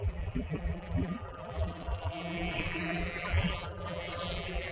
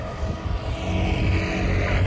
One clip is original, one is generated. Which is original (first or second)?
second